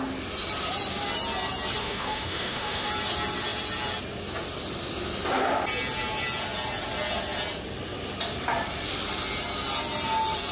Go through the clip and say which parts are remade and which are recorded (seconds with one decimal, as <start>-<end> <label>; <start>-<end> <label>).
0.0-1.8 recorded; 1.8-2.9 remade; 2.9-10.5 recorded